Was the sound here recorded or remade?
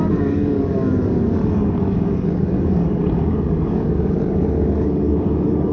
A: remade